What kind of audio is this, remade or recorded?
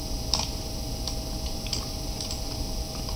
recorded